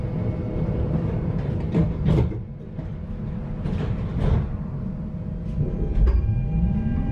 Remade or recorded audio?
recorded